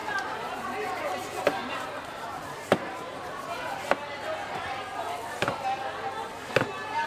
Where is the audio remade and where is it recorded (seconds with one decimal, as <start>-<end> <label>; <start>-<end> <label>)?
0.0-1.0 remade; 1.0-1.6 recorded; 1.6-3.4 remade; 3.4-7.1 recorded